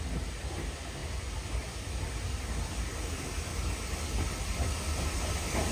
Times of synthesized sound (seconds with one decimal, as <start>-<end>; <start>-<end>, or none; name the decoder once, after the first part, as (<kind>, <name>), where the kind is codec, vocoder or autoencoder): none